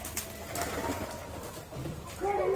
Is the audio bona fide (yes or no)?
yes